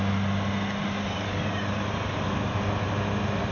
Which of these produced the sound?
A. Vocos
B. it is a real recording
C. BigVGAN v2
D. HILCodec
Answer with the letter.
B